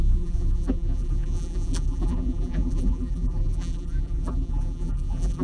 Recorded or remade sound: remade